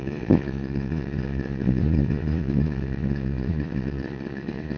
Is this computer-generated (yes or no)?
yes